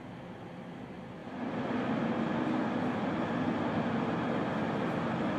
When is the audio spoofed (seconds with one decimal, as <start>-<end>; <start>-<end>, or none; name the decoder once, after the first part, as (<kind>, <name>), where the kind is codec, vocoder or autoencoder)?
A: none